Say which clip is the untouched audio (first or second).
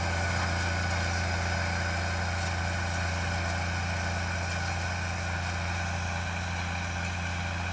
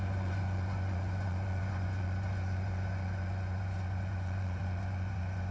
first